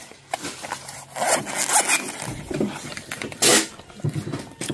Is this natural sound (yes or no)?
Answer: yes